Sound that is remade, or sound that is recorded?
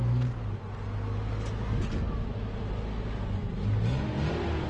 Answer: recorded